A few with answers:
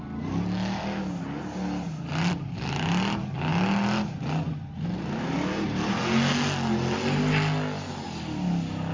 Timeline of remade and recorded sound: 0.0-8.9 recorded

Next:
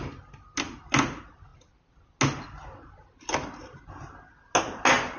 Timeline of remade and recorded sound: 0.0-5.2 recorded

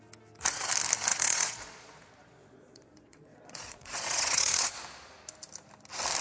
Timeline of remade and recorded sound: 0.0-1.1 recorded; 1.1-4.8 remade; 4.8-6.2 recorded

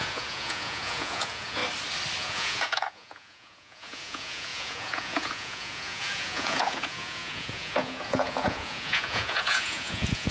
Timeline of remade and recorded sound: 0.0-1.6 remade; 1.6-2.2 recorded; 2.2-10.3 remade

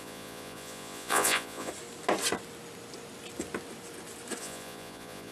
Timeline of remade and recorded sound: 0.0-1.7 remade; 1.7-4.4 recorded; 4.4-5.3 remade

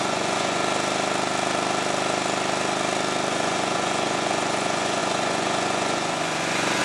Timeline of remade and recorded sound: 0.0-0.6 remade; 0.6-3.3 recorded; 3.3-6.8 remade

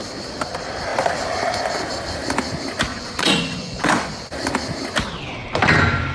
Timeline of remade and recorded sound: 0.0-2.9 recorded; 2.9-4.1 remade; 4.1-6.1 recorded

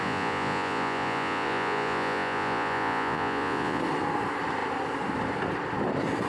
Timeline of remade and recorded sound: 0.0-3.8 remade; 3.8-6.3 recorded